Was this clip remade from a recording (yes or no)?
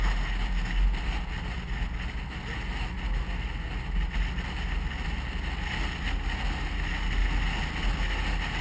no